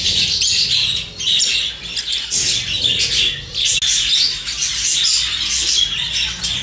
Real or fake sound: real